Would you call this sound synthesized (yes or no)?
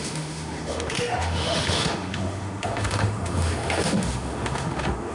yes